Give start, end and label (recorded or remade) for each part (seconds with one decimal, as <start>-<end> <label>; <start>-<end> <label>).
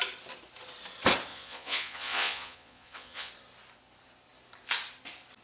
0.0-1.3 recorded; 1.3-3.3 remade; 3.3-5.4 recorded